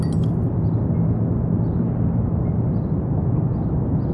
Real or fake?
real